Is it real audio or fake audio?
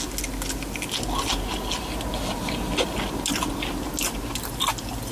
real